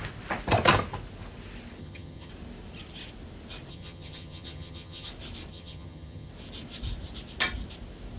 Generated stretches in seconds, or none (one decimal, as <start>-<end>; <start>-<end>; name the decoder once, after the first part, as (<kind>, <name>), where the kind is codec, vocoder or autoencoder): 1.8-2.3 (vocoder, HiFi-GAN); 3.7-5.1; 5.5-6.3